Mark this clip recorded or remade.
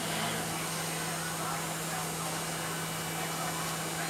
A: recorded